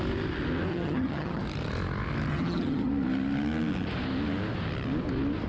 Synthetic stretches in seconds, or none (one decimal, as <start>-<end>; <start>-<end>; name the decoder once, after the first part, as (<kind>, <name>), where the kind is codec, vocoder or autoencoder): 0.7-1.4 (vocoder, HiFi-GAN); 2.3-2.9